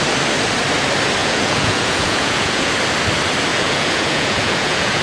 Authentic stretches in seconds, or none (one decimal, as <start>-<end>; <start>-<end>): 0.0-1.2; 2.7-3.5